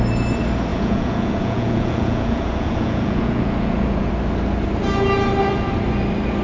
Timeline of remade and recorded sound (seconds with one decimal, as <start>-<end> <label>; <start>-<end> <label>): 0.0-0.7 recorded; 0.7-4.1 remade; 4.1-6.4 recorded